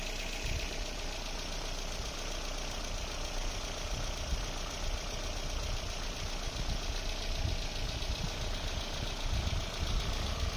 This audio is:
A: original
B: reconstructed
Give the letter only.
A